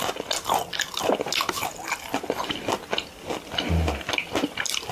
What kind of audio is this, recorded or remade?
recorded